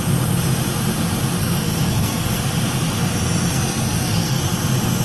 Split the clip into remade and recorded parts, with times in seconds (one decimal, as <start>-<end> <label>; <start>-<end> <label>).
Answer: 0.0-1.4 recorded; 1.4-2.4 remade; 2.4-3.5 recorded; 3.5-4.4 remade; 4.4-5.0 recorded